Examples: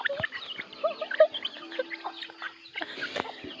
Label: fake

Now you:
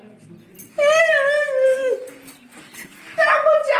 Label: real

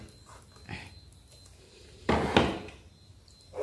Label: real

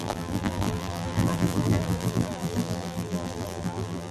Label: fake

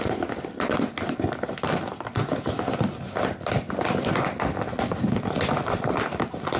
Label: real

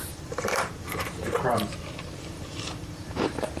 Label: fake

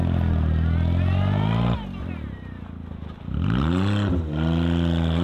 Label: real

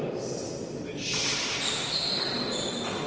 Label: real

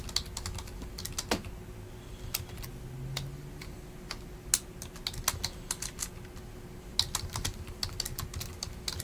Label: real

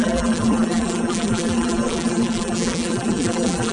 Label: fake